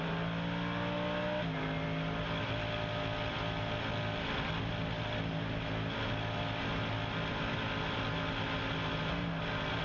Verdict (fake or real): real